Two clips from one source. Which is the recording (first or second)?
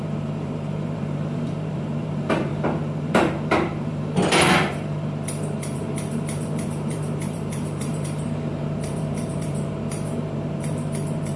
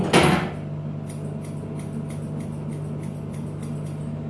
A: second